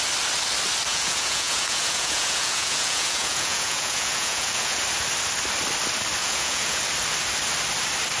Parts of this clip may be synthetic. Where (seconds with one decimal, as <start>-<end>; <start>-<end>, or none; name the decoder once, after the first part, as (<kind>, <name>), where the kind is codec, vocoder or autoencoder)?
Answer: 0.9-4.8 (vocoder, Vocos); 6.2-6.8